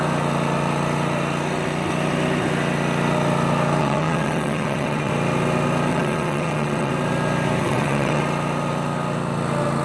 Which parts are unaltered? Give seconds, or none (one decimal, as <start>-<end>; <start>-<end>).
0.0-3.8; 5.1-5.9; 6.9-7.6; 8.2-9.8